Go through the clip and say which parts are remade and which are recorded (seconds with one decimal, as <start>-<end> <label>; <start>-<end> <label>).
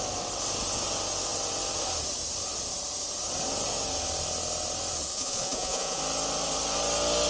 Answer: 0.0-5.1 recorded; 5.1-6.0 remade; 6.0-7.3 recorded